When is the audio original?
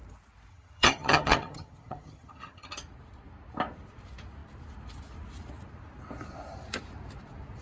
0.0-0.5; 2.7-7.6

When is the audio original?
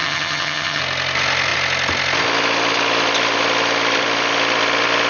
0.8-5.1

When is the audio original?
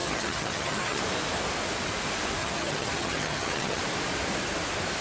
1.0-2.4; 3.8-5.0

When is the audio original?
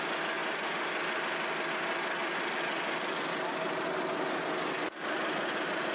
0.0-5.9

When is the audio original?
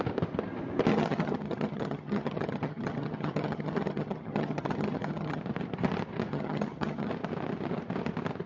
0.0-0.9; 5.4-6.3; 7.1-8.5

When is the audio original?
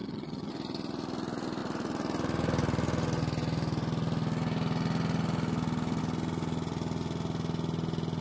0.5-8.2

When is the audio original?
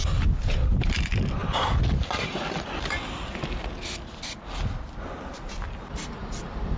0.0-6.8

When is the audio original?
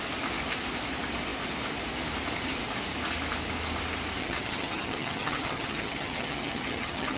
0.0-4.2